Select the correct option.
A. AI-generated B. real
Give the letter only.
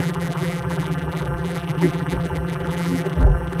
A